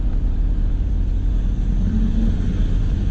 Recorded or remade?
recorded